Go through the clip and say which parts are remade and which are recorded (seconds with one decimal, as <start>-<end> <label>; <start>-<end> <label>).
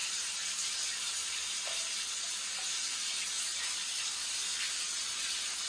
0.0-5.7 recorded